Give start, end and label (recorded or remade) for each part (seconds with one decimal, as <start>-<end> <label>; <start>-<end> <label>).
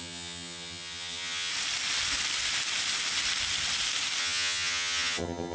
0.0-1.5 remade; 1.5-4.2 recorded; 4.2-5.5 remade